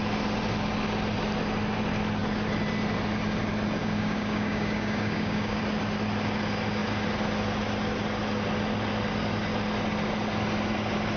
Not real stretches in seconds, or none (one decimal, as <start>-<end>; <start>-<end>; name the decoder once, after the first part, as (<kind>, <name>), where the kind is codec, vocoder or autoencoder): 3.8-5.6 (codec, DAC)